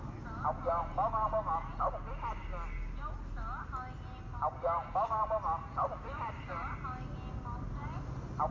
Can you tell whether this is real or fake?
real